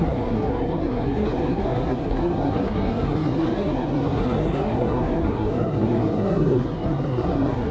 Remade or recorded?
remade